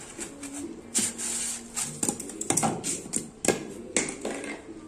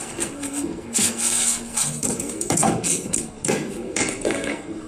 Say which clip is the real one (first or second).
first